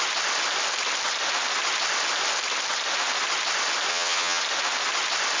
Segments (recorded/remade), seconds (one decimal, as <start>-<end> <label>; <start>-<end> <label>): 0.0-3.9 recorded; 3.9-4.4 remade; 4.4-5.4 recorded